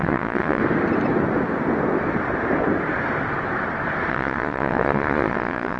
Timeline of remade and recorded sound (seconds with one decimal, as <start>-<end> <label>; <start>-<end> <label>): 0.0-0.6 remade; 0.6-4.1 recorded; 4.1-5.8 remade